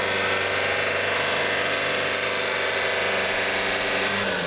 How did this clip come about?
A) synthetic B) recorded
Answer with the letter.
B